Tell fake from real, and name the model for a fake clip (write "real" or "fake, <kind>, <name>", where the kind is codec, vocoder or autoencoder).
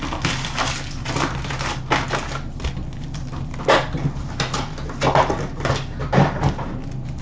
real